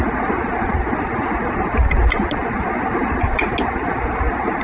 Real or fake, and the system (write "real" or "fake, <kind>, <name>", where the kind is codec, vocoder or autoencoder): real